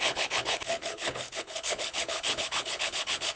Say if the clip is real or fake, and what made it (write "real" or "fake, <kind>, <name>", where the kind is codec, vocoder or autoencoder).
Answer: fake, codec, HILCodec